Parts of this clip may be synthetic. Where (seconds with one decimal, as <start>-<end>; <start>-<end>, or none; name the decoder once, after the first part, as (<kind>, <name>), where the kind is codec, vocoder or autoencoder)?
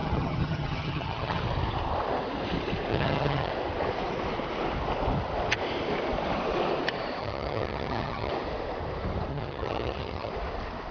0.0-1.4 (vocoder, HiFi-GAN); 2.9-3.5; 7.2-8.3; 9.3-10.3